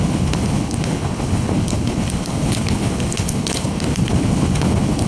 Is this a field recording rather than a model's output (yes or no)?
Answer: no